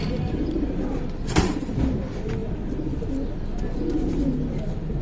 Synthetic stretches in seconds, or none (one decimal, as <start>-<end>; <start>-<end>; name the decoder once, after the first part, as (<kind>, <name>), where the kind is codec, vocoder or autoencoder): none